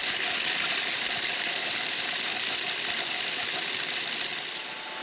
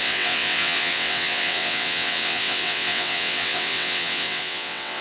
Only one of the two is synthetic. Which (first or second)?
second